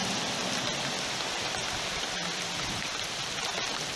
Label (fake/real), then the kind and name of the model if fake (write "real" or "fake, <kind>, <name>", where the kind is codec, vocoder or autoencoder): real